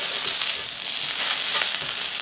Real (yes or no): yes